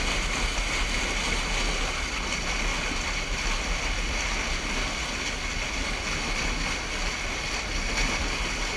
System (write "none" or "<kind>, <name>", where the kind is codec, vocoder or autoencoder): none